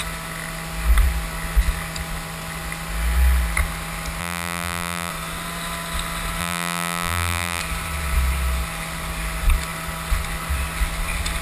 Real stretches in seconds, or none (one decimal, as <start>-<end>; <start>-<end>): 0.0-4.2; 5.1-6.4; 7.6-11.4